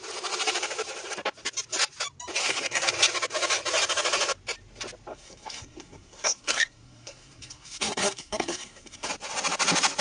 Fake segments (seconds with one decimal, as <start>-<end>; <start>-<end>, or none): 2.4-2.9; 5.1-9.1